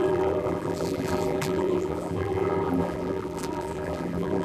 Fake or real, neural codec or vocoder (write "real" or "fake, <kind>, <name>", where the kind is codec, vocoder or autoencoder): fake, vocoder, BigVGAN v2